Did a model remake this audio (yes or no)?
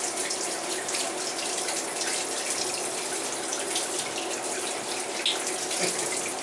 no